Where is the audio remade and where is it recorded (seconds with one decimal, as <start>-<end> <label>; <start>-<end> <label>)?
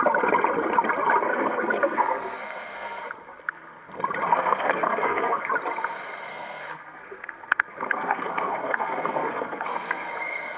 0.0-1.2 recorded; 1.2-3.0 remade; 3.0-4.3 recorded; 4.3-5.5 remade; 5.5-6.3 recorded; 6.3-10.1 remade; 10.1-10.6 recorded